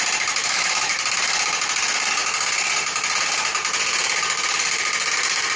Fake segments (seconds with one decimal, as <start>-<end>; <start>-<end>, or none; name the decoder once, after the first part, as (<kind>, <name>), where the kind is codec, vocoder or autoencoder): 0.4-1.0 (autoencoder, DAC-VAE)